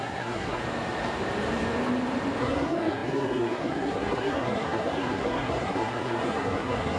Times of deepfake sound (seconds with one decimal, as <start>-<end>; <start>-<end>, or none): 0.0-0.6; 2.4-7.0